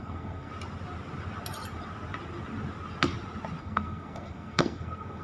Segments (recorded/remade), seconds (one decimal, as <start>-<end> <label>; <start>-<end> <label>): 0.0-0.5 remade; 0.5-3.6 recorded; 3.6-5.2 remade